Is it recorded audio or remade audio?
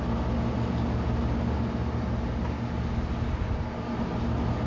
recorded